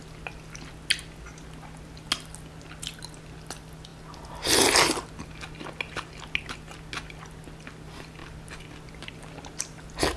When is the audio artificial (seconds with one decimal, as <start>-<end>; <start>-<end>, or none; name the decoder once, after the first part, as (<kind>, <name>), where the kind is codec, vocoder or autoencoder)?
none